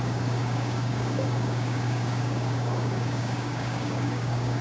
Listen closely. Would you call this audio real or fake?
fake